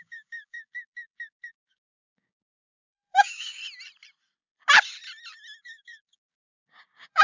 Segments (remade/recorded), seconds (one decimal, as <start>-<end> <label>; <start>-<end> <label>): 0.0-3.6 remade; 3.6-5.6 recorded; 5.6-7.2 remade